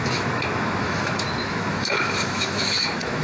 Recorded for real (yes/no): no